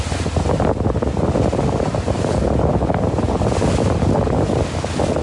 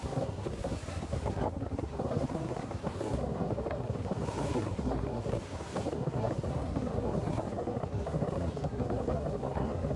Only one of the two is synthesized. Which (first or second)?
second